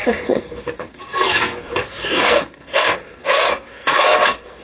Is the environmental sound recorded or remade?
remade